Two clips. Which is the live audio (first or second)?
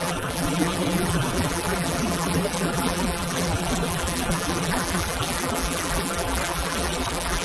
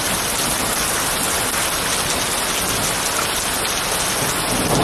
second